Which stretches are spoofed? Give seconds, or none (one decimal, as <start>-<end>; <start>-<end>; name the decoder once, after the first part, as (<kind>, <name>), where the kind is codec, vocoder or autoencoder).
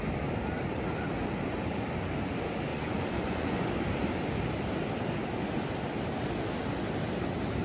2.7-3.7 (vocoder, Vocos)